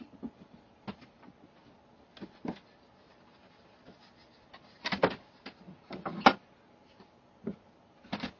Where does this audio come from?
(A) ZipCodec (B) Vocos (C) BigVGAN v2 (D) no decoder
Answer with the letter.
D